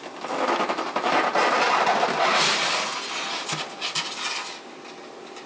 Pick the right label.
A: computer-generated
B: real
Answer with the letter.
B